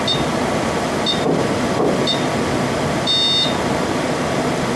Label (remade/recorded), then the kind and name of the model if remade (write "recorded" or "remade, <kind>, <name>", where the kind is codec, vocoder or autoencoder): recorded